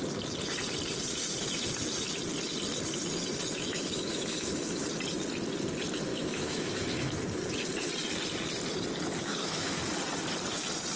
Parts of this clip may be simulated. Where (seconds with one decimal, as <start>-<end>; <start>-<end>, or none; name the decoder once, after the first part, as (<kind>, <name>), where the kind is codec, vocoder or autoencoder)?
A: 3.7-4.8 (autoencoder, DAC-VAE); 6.1-7.2; 9.2-9.8